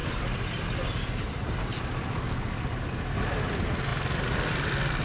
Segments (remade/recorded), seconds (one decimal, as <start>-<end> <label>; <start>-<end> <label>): 0.0-5.0 recorded